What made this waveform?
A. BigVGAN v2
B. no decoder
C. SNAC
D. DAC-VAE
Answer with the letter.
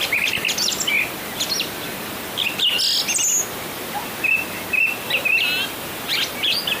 B